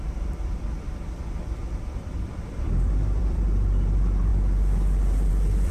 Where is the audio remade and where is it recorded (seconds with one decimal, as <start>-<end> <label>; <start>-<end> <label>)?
0.0-4.3 remade; 4.3-5.3 recorded; 5.3-5.7 remade